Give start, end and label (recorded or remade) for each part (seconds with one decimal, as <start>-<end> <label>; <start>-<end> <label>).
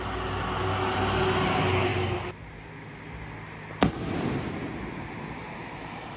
0.0-6.2 recorded